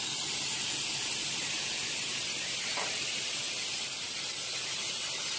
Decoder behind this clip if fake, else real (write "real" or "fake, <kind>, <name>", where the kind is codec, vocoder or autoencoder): real